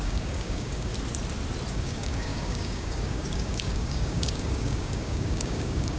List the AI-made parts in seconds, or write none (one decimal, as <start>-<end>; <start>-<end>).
0.0-0.9; 1.7-6.0